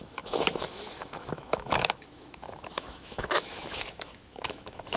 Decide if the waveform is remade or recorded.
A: remade